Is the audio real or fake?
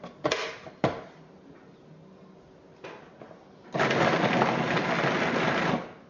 real